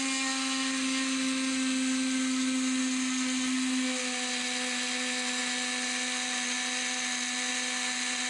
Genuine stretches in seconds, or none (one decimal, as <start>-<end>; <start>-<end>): 0.0-8.3

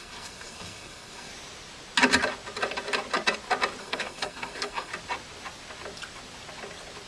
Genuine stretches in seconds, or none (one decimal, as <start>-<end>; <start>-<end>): 1.3-3.8; 4.9-7.1

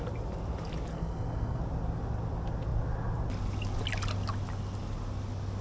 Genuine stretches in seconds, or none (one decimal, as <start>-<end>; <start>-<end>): 0.0-0.9; 1.6-5.6

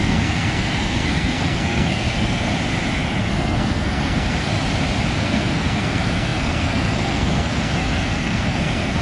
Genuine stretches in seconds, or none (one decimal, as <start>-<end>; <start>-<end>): 2.5-3.2; 4.5-5.2